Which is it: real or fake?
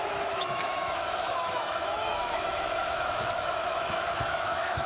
fake